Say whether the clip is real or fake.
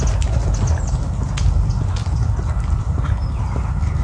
real